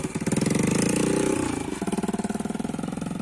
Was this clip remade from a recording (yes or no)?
no